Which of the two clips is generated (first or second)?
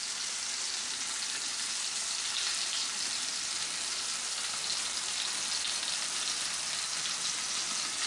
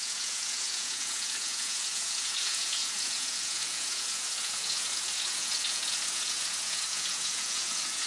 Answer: second